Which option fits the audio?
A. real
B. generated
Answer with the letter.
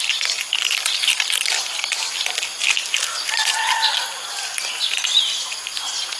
A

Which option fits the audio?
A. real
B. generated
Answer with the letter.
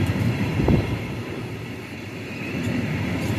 B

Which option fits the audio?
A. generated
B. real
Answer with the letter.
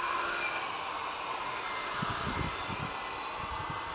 B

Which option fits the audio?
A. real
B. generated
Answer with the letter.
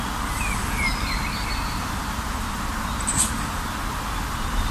A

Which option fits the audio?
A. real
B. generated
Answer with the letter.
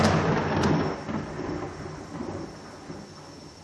A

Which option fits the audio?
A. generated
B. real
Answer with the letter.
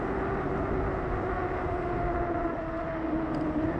B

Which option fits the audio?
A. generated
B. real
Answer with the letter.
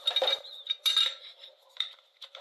A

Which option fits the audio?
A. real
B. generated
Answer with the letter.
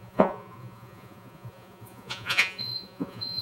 B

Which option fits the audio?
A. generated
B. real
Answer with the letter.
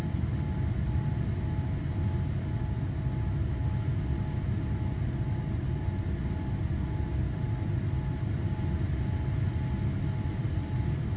B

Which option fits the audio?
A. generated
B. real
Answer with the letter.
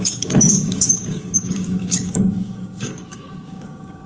A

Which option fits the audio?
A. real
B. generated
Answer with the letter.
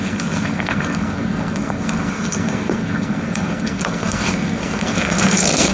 B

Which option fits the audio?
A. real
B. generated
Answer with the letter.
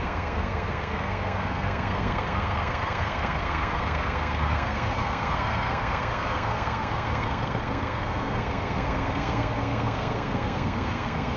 B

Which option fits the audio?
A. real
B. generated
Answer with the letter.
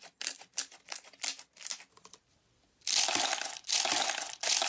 A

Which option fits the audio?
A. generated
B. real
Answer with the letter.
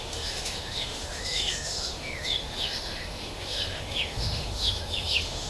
A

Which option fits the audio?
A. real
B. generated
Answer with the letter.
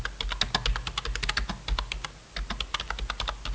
A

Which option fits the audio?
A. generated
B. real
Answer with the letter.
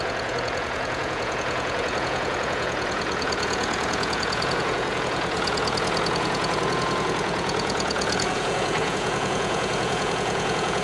A